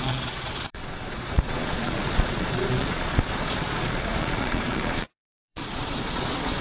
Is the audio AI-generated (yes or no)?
yes